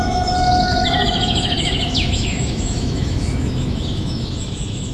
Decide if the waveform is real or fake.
fake